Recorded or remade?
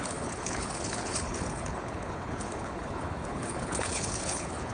remade